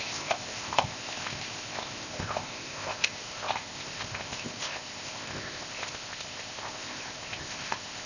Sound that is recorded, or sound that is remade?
remade